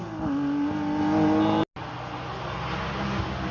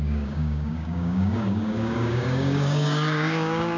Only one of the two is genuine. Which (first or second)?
first